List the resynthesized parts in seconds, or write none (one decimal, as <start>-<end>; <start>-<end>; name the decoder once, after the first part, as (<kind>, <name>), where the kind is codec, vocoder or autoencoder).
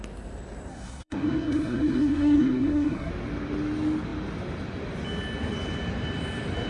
0.7-3.1 (codec, SNAC)